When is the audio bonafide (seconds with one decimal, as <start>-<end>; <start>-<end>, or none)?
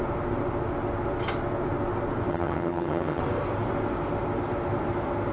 0.0-2.3; 3.2-5.3